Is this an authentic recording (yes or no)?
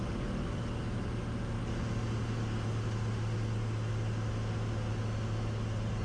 yes